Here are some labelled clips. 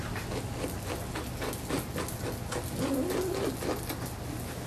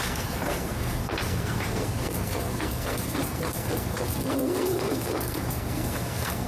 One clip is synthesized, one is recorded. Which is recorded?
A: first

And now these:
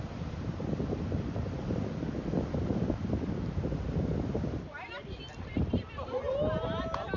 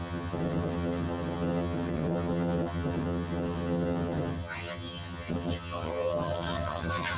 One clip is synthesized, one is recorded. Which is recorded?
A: first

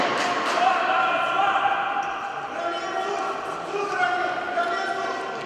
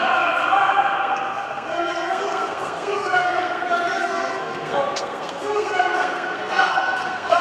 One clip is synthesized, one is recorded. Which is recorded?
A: first